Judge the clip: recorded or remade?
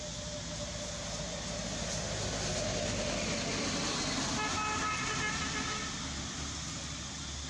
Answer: recorded